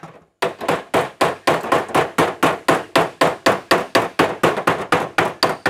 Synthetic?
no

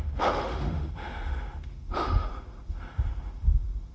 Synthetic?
yes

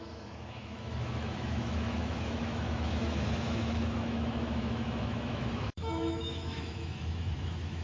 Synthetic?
yes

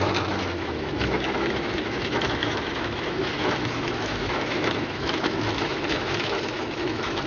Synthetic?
yes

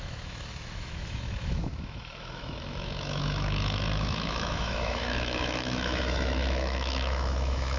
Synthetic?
yes